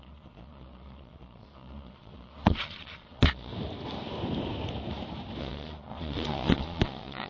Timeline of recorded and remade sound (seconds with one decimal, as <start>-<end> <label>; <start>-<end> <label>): 0.0-3.5 remade; 3.5-5.4 recorded; 5.4-7.3 remade